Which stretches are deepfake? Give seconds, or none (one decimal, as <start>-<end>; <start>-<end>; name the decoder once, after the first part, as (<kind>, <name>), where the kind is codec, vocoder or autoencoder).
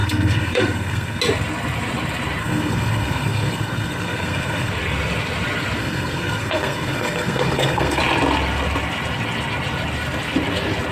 0.0-1.2 (codec, SNAC); 2.4-4.7; 5.8-8.0